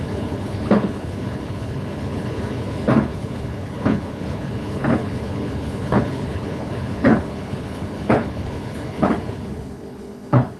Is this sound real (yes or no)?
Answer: no